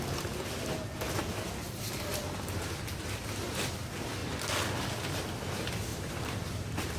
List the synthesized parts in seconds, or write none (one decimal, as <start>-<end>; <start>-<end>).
2.1-2.7; 5.9-7.0